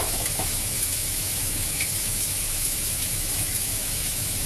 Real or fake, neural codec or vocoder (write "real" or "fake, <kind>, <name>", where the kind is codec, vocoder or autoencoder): fake, autoencoder, DAC-VAE